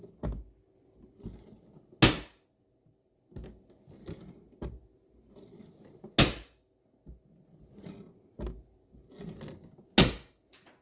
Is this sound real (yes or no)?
yes